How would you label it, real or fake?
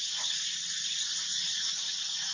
fake